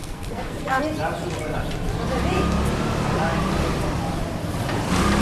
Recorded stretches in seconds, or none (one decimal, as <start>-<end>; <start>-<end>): 0.8-5.2